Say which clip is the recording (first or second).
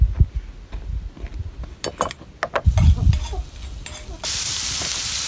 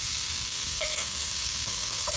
first